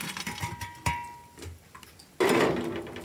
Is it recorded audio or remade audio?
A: recorded